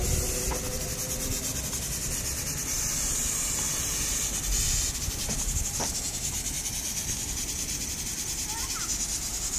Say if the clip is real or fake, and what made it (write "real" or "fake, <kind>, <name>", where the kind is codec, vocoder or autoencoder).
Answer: real